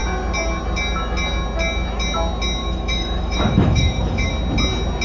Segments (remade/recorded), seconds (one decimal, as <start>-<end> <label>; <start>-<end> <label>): 0.0-2.6 recorded; 2.6-4.3 remade; 4.3-5.0 recorded